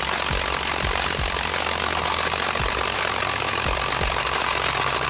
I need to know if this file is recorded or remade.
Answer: recorded